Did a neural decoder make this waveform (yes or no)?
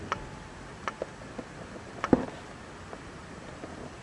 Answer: no